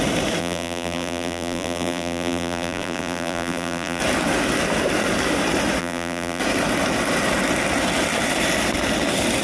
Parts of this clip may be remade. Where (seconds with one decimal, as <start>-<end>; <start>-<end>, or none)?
0.4-4.0; 5.8-6.4